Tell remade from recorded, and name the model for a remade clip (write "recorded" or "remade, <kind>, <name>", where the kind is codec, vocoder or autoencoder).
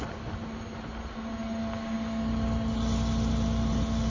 recorded